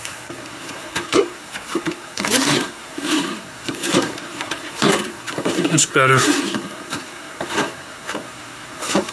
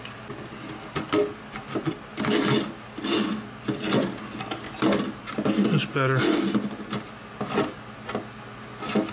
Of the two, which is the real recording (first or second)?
second